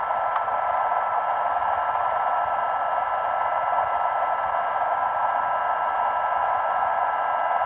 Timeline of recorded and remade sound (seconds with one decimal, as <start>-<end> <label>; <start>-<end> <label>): 0.0-6.4 recorded; 6.4-7.1 remade; 7.1-7.7 recorded